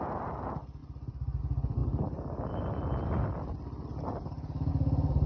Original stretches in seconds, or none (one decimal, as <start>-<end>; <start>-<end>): 0.0-5.3